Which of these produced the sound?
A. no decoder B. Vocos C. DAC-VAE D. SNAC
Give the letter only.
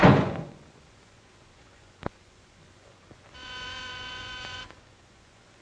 B